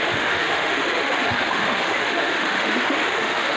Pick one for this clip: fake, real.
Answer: fake